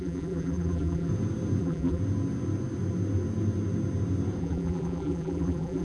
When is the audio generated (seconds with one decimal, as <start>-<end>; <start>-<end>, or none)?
0.0-1.1; 1.6-2.0; 4.4-5.8